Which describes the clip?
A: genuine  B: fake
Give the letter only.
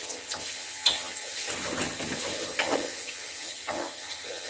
B